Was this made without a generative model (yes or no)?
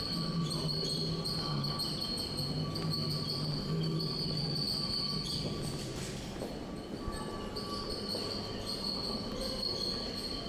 yes